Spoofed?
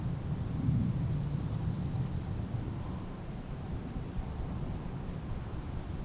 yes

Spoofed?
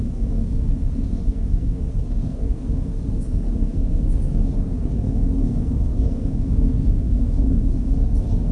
yes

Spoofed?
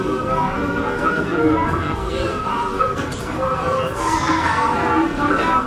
yes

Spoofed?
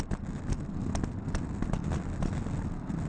no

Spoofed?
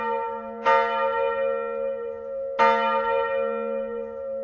no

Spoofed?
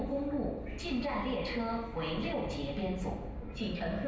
no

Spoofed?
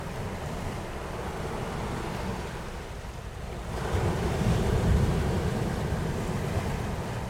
no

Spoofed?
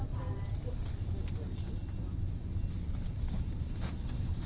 no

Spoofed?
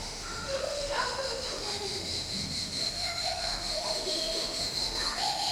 yes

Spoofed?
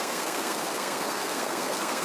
yes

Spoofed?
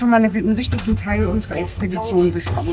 yes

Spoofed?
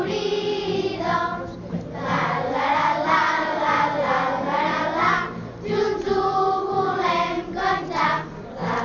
no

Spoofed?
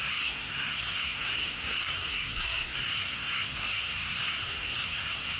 yes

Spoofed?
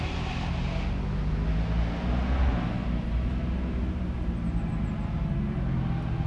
no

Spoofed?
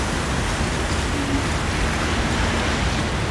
no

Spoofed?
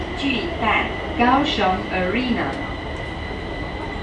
no